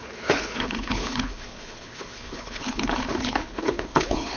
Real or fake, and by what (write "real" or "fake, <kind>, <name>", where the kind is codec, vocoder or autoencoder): fake, codec, HILCodec